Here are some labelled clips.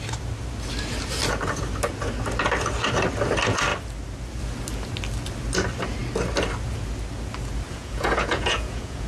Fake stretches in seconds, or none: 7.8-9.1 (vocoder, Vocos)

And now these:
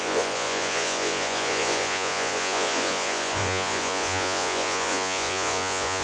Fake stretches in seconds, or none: 0.0-6.0 (vocoder, Vocos)